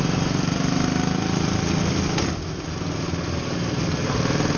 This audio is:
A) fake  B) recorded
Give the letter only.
B